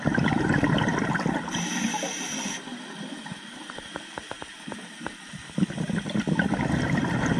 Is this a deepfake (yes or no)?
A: yes